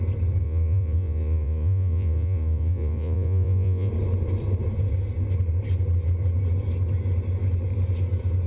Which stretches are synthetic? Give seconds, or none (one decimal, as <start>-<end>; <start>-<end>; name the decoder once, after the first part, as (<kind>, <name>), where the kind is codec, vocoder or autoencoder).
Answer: 0.4-3.9 (vocoder, Vocos)